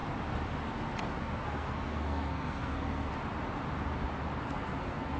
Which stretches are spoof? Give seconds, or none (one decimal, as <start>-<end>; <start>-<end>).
1.2-3.1; 4.4-5.2